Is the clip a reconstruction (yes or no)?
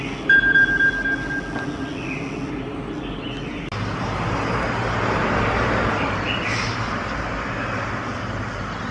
no